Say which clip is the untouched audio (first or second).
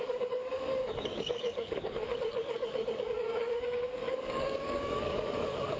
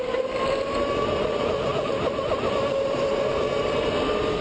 second